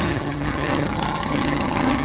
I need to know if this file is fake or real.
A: fake